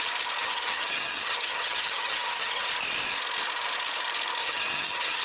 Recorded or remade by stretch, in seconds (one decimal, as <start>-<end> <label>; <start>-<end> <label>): 0.0-0.4 recorded; 0.4-2.7 remade; 2.7-4.4 recorded; 4.4-5.2 remade